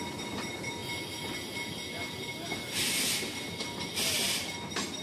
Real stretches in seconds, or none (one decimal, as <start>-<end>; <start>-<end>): 0.8-3.8